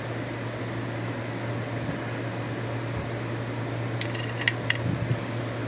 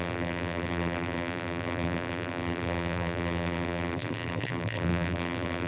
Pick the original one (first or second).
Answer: first